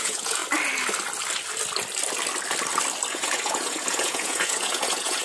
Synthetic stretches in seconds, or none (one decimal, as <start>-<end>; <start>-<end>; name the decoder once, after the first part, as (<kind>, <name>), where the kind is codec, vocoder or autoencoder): 0.0-0.4 (vocoder, Vocos); 3.1-5.2